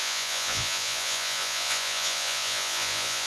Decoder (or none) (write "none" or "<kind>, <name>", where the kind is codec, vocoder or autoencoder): vocoder, Vocos